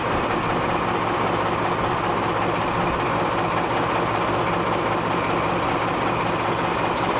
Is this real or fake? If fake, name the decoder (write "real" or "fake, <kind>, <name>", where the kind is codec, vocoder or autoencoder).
real